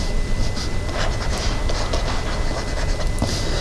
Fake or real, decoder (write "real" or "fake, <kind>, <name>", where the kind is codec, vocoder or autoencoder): real